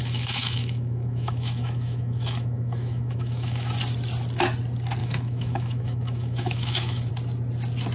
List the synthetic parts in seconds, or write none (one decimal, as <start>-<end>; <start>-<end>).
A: 0.0-3.7; 5.0-7.1